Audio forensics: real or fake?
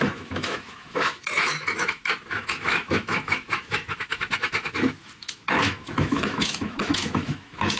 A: fake